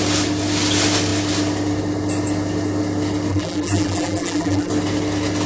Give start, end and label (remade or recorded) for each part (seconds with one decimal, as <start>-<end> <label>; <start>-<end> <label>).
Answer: 0.0-3.3 recorded; 3.3-4.7 remade; 4.7-5.5 recorded